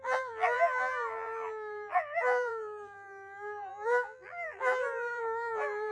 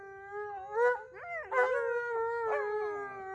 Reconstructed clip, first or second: first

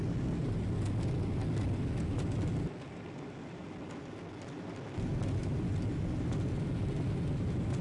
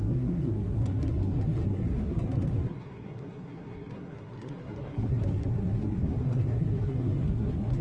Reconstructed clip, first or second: second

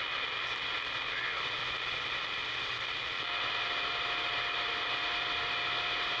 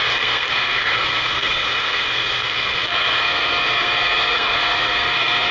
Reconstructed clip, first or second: second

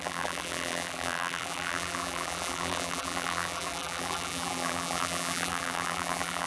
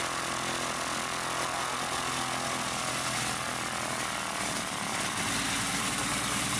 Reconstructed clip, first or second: first